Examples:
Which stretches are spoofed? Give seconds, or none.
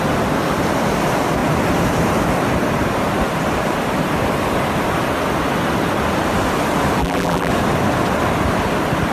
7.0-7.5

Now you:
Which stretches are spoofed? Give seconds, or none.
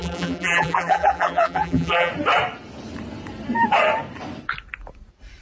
0.0-2.1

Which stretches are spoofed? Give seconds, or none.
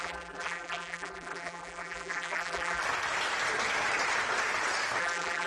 0.0-2.8; 5.0-5.5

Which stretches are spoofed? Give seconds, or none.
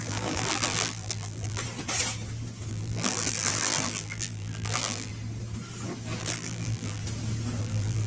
0.0-1.6; 2.7-5.1; 6.2-7.0; 7.6-8.1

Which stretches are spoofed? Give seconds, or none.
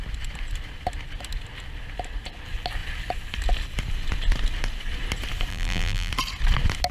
5.5-6.1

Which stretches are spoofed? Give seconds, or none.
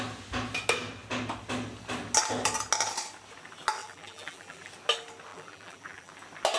3.8-4.7; 5.3-6.1